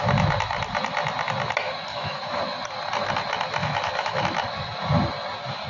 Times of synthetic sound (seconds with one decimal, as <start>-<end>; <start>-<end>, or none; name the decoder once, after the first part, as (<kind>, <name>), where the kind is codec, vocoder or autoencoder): 1.9-2.4 (autoencoder, DAC-VAE); 3.6-4.2